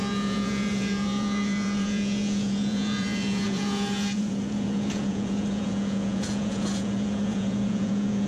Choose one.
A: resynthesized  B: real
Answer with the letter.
A